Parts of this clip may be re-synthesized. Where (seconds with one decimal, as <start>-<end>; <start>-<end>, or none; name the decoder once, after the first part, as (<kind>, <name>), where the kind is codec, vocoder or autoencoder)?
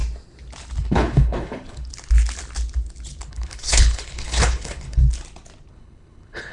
0.8-1.9 (codec, HILCodec); 3.3-5.0; 5.7-6.5